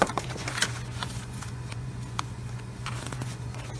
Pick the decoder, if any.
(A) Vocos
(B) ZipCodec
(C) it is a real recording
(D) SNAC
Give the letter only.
A